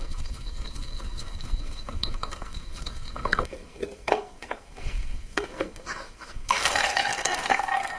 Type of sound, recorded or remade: remade